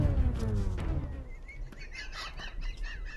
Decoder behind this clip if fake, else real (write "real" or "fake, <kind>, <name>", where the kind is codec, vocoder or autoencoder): real